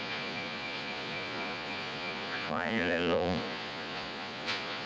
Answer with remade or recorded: remade